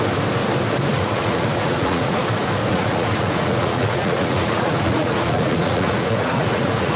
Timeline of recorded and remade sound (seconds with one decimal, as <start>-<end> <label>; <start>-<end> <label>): 0.0-0.9 recorded; 0.9-2.2 remade; 2.2-2.7 recorded; 2.7-7.0 remade